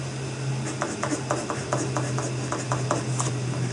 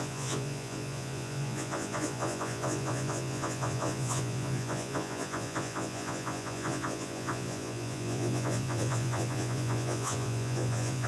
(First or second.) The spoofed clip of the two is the second